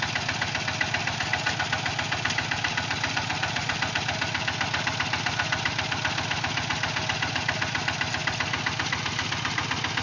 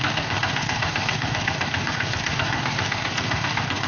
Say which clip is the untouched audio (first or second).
first